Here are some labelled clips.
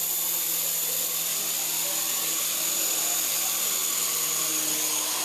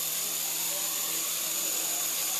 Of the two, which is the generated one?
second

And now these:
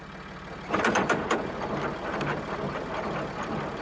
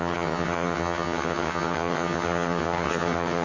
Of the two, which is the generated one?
second